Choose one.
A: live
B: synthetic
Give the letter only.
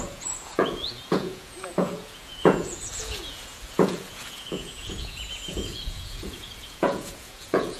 B